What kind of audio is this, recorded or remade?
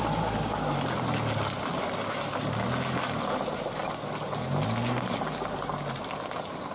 recorded